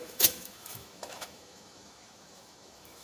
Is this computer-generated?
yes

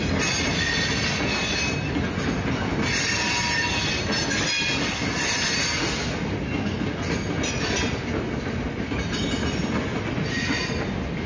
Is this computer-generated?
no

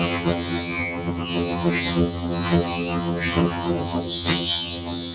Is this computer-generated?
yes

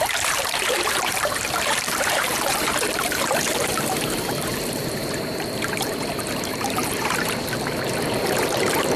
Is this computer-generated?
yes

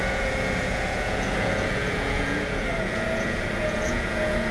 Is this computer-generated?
yes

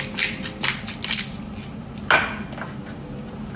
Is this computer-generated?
no